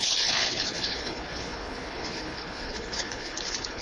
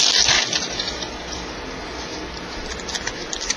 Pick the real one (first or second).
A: second